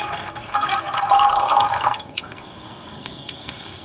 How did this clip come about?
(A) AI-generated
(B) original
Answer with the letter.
A